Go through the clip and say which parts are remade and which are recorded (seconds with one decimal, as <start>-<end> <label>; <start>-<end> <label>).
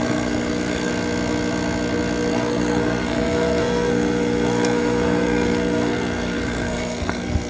0.0-0.9 remade; 0.9-2.3 recorded; 2.3-7.5 remade